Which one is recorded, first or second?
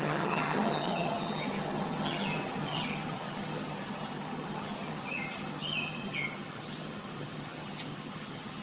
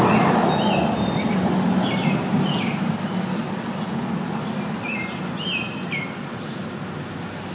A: second